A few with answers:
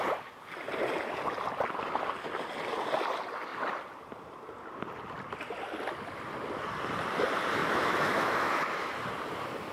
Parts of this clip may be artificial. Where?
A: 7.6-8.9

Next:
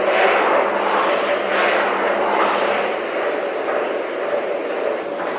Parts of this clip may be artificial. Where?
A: none

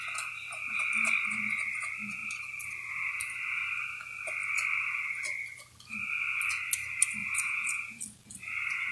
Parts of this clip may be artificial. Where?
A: 7.2-8.0

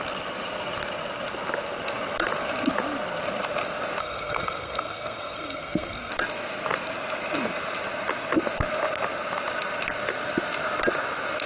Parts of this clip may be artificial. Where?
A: 4.0-6.1